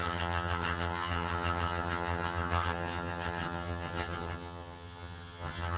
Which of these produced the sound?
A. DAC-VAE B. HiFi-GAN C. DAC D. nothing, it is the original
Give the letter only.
B